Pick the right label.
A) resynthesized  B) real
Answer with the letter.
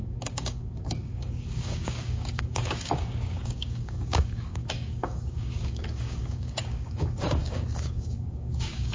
A